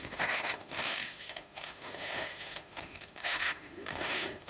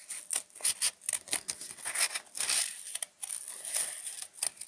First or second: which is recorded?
second